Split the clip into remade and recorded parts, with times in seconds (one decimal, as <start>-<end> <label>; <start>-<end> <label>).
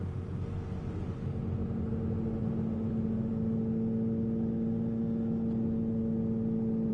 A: 0.0-6.9 recorded